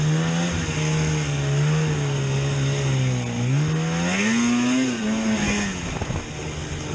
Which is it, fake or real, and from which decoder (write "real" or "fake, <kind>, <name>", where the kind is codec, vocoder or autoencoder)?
real